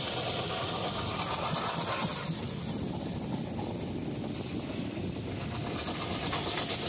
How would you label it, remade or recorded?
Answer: recorded